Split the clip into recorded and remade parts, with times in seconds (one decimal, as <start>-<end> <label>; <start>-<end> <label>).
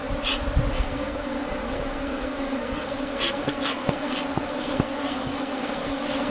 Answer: 0.0-0.7 recorded; 0.7-6.3 remade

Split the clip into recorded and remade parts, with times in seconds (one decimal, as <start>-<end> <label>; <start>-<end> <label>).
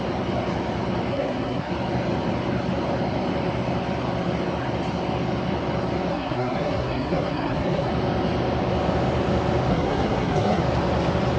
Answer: 0.0-1.1 recorded; 1.1-1.7 remade; 1.7-6.1 recorded; 6.1-7.9 remade; 7.9-9.7 recorded; 9.7-10.6 remade; 10.6-11.4 recorded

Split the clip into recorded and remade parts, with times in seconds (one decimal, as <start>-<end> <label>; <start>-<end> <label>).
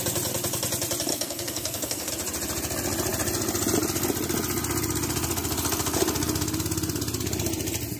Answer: 0.0-1.1 recorded; 1.1-2.1 remade; 2.1-8.0 recorded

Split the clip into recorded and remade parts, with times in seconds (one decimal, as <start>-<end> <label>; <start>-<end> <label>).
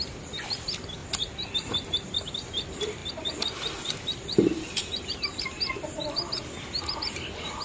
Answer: 0.0-7.6 recorded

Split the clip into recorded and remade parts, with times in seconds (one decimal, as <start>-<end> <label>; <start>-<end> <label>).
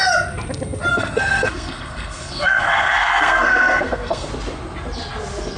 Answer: 0.0-0.9 recorded; 0.9-4.3 remade; 4.3-5.6 recorded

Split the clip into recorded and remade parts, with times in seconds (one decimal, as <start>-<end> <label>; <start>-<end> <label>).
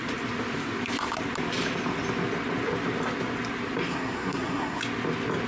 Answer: 0.0-3.9 recorded; 3.9-4.8 remade; 4.8-5.5 recorded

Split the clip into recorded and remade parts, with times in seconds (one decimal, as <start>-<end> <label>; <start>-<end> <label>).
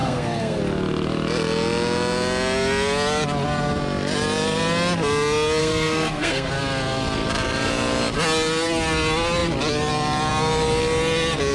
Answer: 0.0-0.6 remade; 0.6-5.6 recorded; 5.6-6.5 remade; 6.5-11.5 recorded